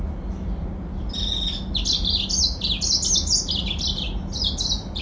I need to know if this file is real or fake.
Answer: real